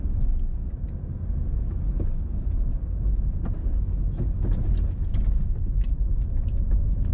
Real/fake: real